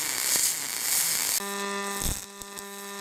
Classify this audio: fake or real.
real